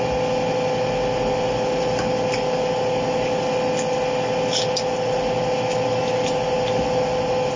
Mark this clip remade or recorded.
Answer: recorded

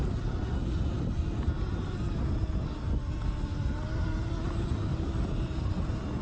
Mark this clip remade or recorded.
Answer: recorded